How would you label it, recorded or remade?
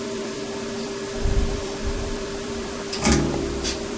remade